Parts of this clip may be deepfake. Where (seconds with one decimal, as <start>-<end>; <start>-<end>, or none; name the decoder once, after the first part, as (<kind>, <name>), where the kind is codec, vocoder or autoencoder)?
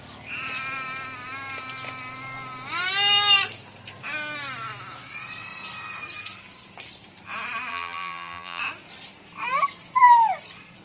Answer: 7.7-8.6 (vocoder, BigVGAN v2)